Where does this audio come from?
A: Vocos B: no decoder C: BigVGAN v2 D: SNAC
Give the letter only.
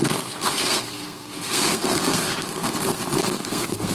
D